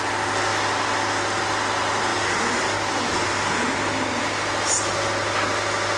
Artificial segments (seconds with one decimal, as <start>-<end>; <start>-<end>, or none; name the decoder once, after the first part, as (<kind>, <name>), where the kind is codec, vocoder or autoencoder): none